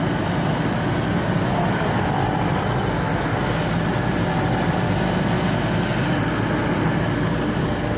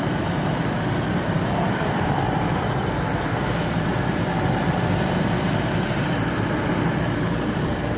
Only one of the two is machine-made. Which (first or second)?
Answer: second